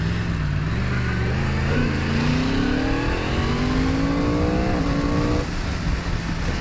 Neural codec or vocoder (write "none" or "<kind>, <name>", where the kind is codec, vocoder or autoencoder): none